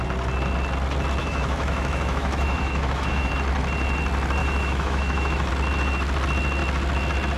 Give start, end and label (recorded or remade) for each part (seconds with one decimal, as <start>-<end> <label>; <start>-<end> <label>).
0.0-1.2 recorded; 1.2-3.3 remade; 3.3-4.4 recorded; 4.4-5.5 remade; 5.5-7.4 recorded